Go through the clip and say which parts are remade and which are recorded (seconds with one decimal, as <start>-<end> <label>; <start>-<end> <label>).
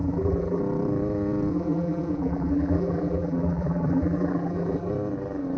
0.0-0.6 remade; 0.6-1.5 recorded; 1.5-4.9 remade; 4.9-5.6 recorded